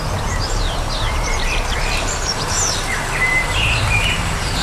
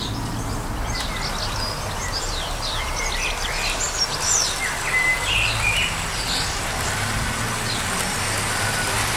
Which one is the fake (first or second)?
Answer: first